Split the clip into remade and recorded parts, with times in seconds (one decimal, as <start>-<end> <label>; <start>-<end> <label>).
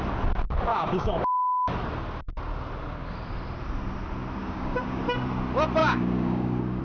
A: 0.0-0.7 recorded; 0.7-1.2 remade; 1.2-4.4 recorded; 4.4-5.0 remade; 5.0-5.8 recorded; 5.8-6.8 remade